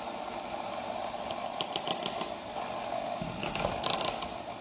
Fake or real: real